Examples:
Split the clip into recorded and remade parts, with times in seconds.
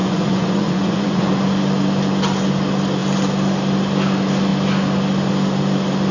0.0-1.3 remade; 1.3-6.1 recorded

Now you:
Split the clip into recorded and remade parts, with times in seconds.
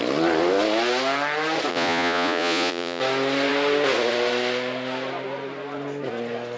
0.0-1.7 recorded; 1.7-3.0 remade; 3.0-6.6 recorded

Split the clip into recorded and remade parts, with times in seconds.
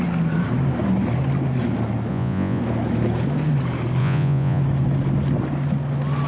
0.0-2.1 recorded; 2.1-2.6 remade; 2.6-4.0 recorded; 4.0-4.6 remade; 4.6-6.3 recorded